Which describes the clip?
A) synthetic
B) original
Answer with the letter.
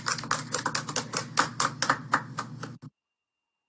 B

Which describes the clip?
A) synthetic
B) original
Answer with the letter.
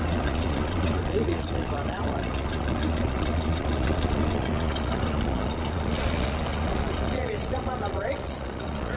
A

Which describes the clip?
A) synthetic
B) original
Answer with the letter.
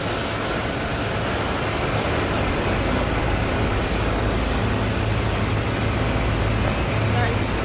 B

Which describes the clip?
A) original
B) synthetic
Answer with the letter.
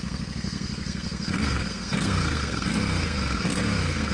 B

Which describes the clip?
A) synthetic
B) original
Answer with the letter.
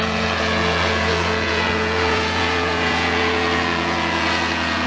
A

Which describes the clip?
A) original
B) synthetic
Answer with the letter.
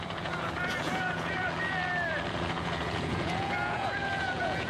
B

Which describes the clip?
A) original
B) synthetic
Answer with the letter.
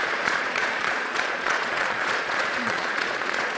B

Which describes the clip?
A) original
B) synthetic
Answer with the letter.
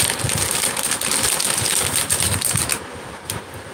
A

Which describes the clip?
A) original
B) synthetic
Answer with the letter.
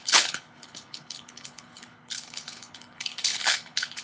B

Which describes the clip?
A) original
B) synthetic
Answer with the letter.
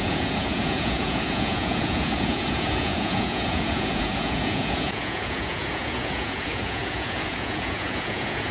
B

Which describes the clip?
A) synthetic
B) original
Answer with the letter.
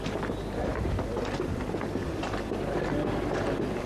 B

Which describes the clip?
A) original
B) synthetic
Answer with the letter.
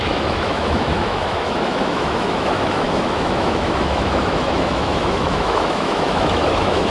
B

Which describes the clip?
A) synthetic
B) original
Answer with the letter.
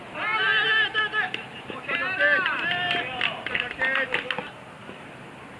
B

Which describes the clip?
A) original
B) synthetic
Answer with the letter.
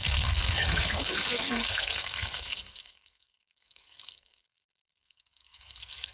B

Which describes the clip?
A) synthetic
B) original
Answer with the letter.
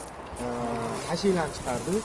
B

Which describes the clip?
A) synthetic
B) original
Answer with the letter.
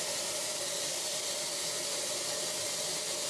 B